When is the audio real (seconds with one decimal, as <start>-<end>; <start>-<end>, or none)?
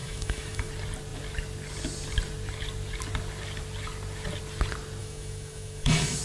0.7-5.0